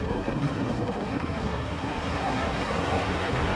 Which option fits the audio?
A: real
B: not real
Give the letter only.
B